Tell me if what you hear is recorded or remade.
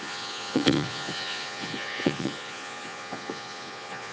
remade